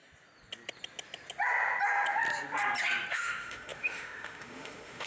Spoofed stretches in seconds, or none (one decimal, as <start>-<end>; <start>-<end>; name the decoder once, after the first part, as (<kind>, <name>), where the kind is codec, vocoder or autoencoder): 3.1-5.1 (autoencoder, DAC-VAE)